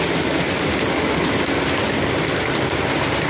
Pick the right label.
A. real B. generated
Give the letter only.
A